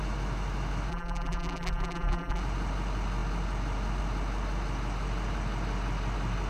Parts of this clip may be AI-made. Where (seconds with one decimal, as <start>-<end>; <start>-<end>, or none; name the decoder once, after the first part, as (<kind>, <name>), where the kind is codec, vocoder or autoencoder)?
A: 0.9-2.4 (vocoder, BigVGAN v2)